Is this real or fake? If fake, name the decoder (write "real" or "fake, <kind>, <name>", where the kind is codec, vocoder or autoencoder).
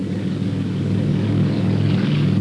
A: fake, codec, DAC